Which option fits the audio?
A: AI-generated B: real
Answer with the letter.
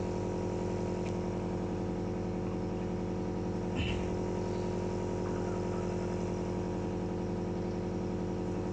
B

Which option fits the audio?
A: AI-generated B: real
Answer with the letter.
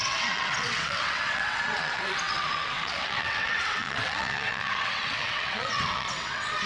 A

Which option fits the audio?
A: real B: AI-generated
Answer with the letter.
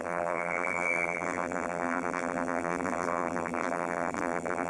B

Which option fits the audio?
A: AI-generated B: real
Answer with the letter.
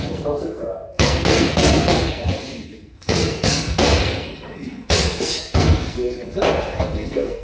A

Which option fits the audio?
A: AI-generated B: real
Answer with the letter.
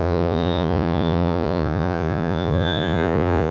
A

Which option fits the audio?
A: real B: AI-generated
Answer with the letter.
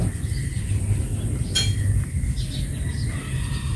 A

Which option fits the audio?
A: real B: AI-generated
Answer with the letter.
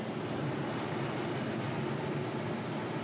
A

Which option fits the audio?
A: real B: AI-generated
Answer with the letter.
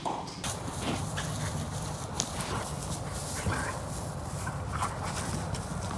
A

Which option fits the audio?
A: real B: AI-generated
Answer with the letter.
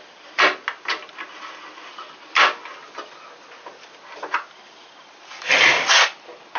A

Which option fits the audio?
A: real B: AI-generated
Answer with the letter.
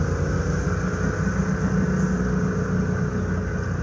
A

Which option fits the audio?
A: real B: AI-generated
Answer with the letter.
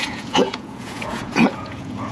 B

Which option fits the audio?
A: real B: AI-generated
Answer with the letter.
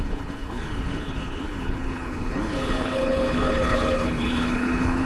B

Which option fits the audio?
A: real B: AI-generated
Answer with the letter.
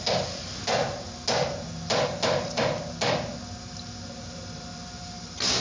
A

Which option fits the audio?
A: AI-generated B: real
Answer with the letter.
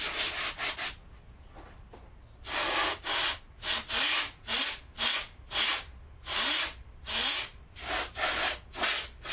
B